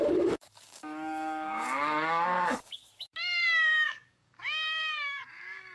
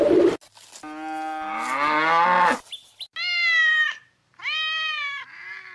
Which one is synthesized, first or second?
first